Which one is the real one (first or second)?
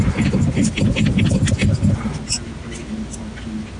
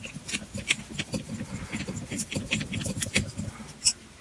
first